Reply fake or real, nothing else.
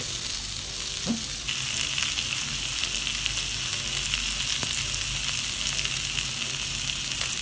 real